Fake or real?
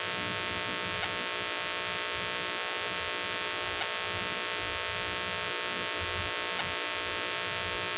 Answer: real